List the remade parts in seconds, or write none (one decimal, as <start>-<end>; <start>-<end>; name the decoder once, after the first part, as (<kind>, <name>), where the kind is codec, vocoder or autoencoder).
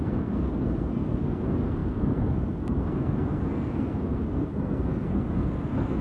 0.0-6.0 (codec, SNAC)